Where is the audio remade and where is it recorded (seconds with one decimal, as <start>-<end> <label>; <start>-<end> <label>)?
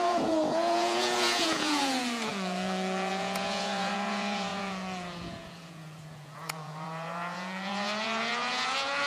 0.0-9.1 remade